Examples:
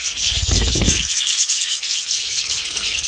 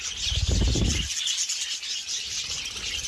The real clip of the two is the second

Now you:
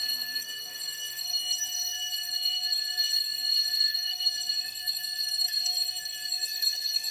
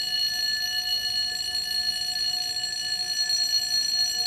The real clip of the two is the second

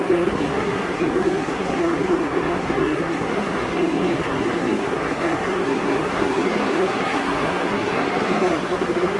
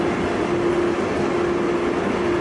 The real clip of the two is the second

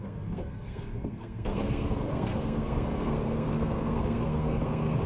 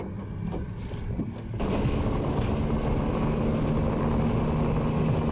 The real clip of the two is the second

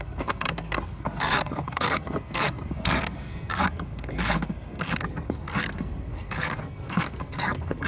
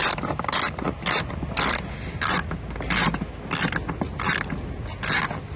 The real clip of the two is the second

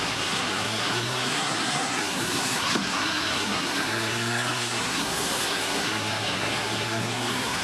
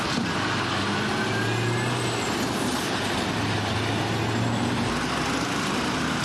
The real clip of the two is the second